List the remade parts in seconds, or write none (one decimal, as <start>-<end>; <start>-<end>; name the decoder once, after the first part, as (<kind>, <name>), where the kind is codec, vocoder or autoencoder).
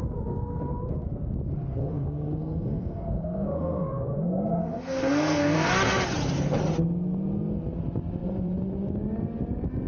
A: 1.8-5.7 (codec, SNAC)